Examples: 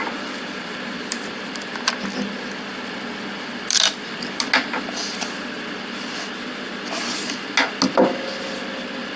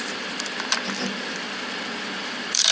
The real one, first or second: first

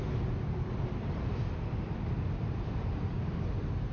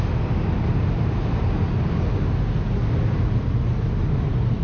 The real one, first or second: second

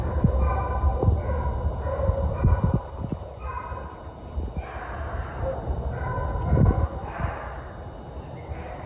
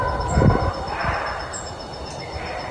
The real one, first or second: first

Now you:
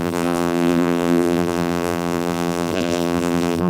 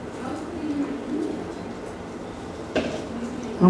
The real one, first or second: second